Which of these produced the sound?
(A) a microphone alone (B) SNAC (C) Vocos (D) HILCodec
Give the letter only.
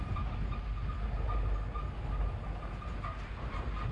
A